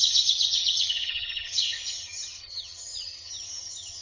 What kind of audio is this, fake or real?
fake